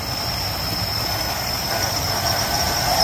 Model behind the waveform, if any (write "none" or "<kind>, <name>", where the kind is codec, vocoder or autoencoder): none